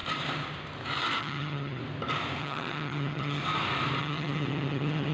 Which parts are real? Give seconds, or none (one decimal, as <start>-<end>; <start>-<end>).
0.0-1.2; 1.8-2.4; 3.4-4.0